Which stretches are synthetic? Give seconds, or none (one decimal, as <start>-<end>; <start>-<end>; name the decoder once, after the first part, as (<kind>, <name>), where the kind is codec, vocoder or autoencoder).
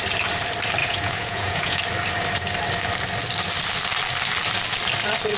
0.8-1.8 (vocoder, Vocos)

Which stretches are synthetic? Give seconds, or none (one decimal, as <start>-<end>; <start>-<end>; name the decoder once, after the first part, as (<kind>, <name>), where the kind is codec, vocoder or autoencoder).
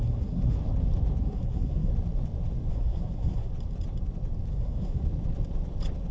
0.0-0.6 (codec, SNAC); 1.2-1.9; 2.7-3.5; 4.5-5.0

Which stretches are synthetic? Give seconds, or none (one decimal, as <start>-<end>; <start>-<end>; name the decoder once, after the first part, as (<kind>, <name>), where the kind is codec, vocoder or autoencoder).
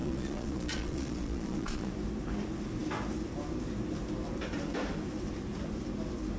0.0-1.9 (vocoder, Vocos)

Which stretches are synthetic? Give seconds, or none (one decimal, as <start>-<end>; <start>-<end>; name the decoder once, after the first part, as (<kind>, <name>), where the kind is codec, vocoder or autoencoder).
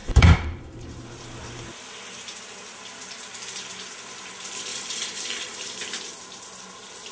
0.0-1.0 (vocoder, BigVGAN v2); 4.7-5.8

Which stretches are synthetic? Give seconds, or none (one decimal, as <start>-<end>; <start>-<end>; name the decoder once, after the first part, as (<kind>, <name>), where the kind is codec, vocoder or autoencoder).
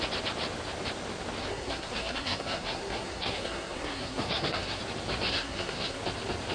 1.4-4.8 (codec, SNAC); 5.3-6.0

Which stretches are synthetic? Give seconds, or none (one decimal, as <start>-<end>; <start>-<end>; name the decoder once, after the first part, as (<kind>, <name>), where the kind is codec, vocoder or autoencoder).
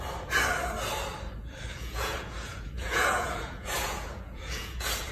1.7-5.1 (vocoder, Vocos)